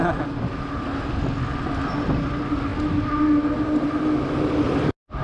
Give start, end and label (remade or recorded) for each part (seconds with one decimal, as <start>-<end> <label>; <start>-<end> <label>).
0.0-5.2 recorded